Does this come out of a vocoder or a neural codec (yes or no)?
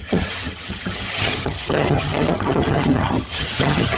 yes